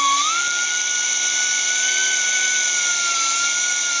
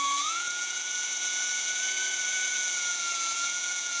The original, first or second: first